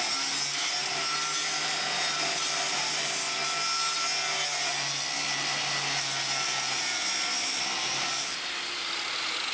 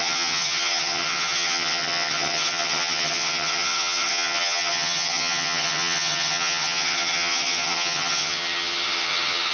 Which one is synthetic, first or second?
second